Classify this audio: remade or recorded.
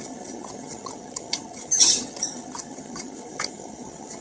remade